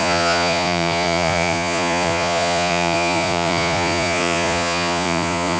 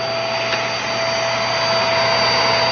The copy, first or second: first